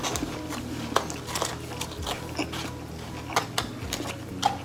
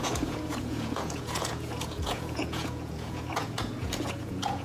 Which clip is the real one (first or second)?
first